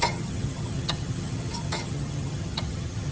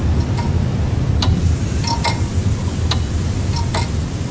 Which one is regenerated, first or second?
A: first